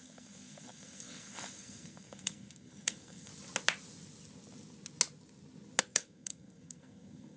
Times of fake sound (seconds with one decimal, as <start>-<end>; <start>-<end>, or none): 0.0-3.3; 5.8-7.4